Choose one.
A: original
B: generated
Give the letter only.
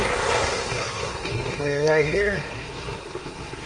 B